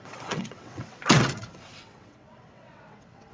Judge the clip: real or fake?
fake